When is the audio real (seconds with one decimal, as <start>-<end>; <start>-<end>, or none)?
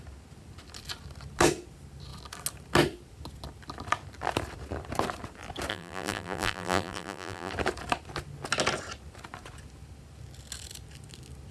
0.0-5.7; 7.5-11.5